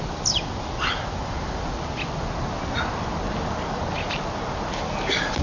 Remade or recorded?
recorded